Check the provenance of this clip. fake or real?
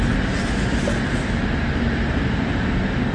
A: real